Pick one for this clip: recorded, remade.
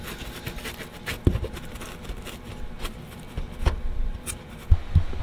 recorded